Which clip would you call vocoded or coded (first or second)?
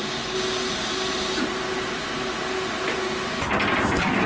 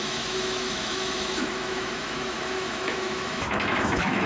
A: second